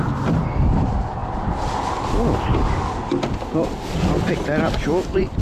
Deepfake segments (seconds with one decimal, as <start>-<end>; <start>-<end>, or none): none